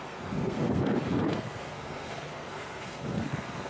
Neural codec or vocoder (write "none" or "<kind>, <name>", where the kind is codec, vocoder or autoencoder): codec, SNAC